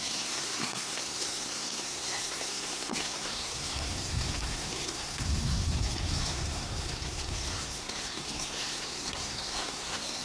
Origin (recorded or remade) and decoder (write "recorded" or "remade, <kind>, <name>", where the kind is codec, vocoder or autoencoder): remade, codec, SNAC